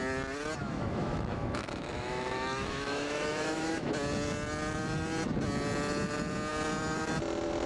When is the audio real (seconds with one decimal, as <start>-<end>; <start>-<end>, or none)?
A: 0.0-0.6; 3.9-7.7